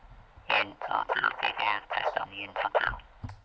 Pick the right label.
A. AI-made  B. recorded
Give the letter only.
B